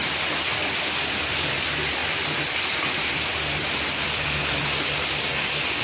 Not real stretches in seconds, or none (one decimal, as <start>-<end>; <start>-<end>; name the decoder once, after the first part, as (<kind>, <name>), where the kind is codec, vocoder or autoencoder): 0.0-5.8 (vocoder, BigVGAN v2)